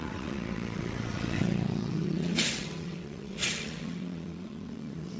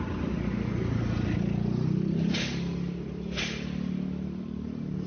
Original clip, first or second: second